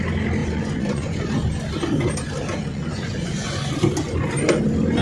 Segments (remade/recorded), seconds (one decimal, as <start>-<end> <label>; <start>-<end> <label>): 0.0-0.4 recorded; 0.4-1.2 remade; 1.2-2.7 recorded; 2.7-3.7 remade; 3.7-5.0 recorded